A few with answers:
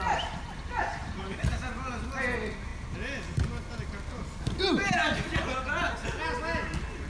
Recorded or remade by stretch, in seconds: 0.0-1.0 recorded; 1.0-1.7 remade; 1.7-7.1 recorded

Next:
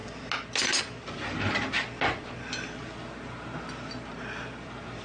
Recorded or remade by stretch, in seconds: 0.0-5.0 recorded